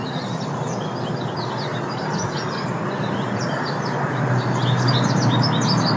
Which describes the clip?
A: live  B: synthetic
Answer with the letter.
A